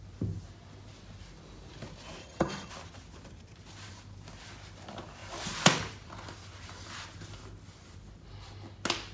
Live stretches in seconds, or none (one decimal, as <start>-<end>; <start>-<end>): 0.0-2.2; 2.7-9.1